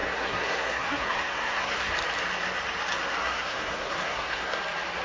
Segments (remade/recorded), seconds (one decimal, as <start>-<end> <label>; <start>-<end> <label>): 0.0-1.9 remade; 1.9-3.2 recorded; 3.2-4.6 remade; 4.6-5.0 recorded